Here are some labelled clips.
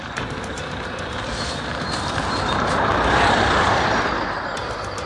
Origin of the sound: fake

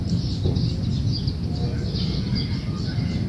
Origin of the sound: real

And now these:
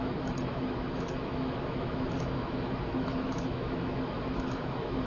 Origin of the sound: fake